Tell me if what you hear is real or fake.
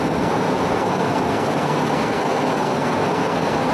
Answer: fake